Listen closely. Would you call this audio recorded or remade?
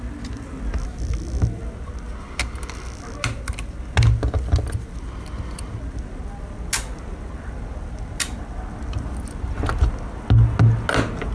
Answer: recorded